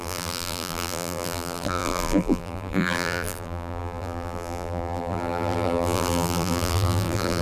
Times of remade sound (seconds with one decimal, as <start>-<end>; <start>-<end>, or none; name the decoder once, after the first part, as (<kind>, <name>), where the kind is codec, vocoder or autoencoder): 0.0-7.4 (vocoder, BigVGAN v2)